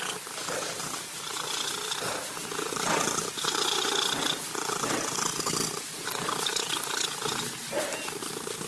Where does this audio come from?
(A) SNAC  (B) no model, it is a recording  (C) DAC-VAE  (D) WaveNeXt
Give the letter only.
B